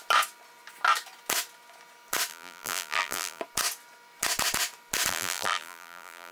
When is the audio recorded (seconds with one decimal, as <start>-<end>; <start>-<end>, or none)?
0.0-2.3; 3.4-5.1